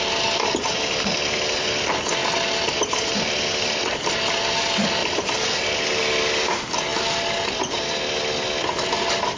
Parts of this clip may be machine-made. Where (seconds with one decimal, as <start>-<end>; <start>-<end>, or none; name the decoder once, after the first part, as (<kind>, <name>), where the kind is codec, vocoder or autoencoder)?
none